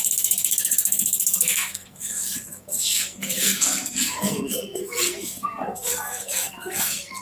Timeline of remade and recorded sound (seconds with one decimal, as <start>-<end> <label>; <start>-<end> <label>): 0.0-7.2 remade